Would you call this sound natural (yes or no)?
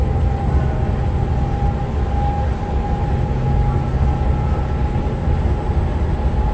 yes